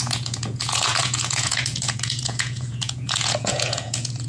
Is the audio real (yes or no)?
no